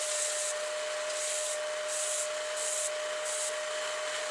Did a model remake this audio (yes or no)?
no